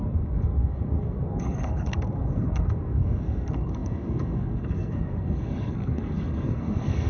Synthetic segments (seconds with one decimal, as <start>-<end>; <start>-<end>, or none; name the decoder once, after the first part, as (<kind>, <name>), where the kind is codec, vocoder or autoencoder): 0.0-7.1 (codec, SNAC)